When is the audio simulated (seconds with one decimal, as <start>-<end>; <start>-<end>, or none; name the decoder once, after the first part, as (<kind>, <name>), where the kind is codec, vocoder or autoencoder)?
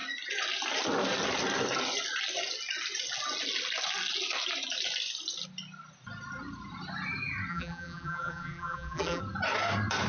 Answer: 7.5-9.2 (vocoder, BigVGAN v2)